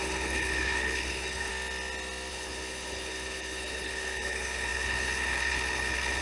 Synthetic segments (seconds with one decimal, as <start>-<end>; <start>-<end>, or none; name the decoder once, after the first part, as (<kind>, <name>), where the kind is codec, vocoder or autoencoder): 0.0-1.5 (codec, HILCodec); 2.3-6.2